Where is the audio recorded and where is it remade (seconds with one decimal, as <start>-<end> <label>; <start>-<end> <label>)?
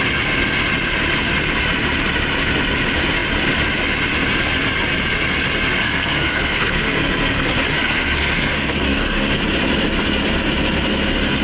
0.0-5.8 recorded; 5.8-9.4 remade; 9.4-11.4 recorded